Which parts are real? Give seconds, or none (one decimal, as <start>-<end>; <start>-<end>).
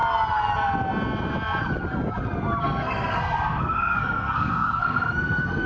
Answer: 0.0-2.6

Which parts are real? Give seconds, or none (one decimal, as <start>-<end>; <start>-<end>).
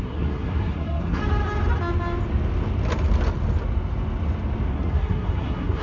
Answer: 1.2-4.7